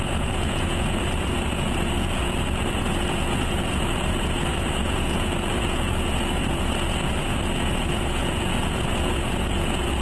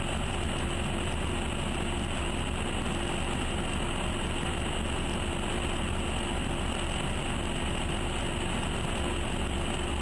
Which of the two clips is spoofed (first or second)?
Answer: first